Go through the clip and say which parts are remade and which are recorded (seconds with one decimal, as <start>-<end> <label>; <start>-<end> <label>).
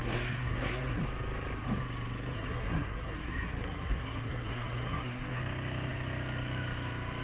0.0-1.0 remade; 1.0-2.3 recorded; 2.3-5.4 remade; 5.4-7.2 recorded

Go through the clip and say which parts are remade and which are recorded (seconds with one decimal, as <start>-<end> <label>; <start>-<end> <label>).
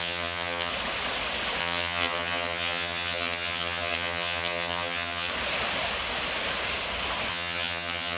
0.0-0.7 remade; 0.7-1.6 recorded; 1.6-5.3 remade; 5.3-7.3 recorded; 7.3-8.2 remade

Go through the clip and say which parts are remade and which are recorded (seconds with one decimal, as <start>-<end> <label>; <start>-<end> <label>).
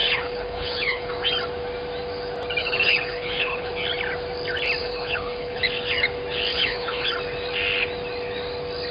0.0-1.1 remade; 1.1-2.6 recorded; 2.6-3.7 remade; 3.7-4.8 recorded; 4.8-5.6 remade; 5.6-6.5 recorded; 6.5-7.1 remade; 7.1-8.9 recorded